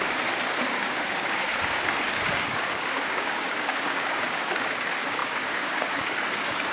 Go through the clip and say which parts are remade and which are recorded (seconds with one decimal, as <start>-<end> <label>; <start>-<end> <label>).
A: 0.0-6.7 remade